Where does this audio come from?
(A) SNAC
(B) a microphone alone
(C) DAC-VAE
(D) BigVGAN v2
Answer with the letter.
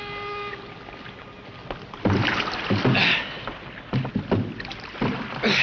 B